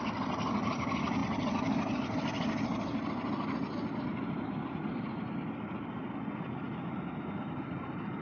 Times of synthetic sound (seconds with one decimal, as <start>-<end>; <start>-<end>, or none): none